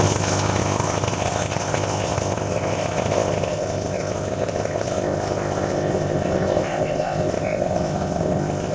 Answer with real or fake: fake